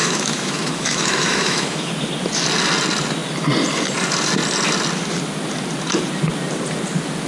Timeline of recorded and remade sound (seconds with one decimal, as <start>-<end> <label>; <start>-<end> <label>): 0.0-1.9 remade; 1.9-7.3 recorded

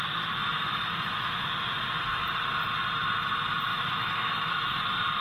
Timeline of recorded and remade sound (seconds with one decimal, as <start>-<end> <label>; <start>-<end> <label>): 0.0-0.5 recorded; 0.5-1.5 remade; 1.5-3.7 recorded; 3.7-4.8 remade; 4.8-5.2 recorded

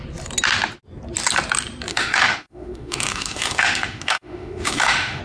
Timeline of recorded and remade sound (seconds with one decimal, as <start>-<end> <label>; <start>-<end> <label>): 0.0-1.9 recorded; 1.9-5.2 remade

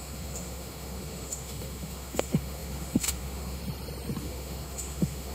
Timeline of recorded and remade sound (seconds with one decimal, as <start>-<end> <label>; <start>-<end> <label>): 0.0-3.6 remade; 3.6-4.2 recorded; 4.2-5.3 remade